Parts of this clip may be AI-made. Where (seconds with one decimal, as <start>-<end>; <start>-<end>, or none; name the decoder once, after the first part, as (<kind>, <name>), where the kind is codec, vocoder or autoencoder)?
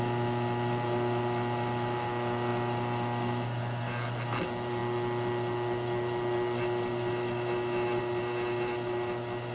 none